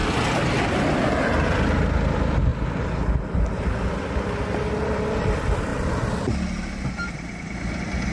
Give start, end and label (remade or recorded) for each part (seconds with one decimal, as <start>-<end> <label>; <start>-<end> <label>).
0.0-1.2 recorded; 1.2-2.5 remade; 2.5-4.7 recorded; 4.7-5.7 remade; 5.7-6.9 recorded; 6.9-8.1 remade